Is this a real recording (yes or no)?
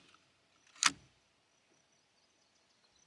yes